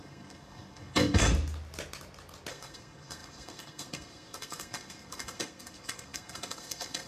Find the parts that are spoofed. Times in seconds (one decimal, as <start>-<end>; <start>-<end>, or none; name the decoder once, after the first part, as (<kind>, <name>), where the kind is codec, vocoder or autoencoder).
0.0-1.3 (codec, SNAC); 2.5-7.1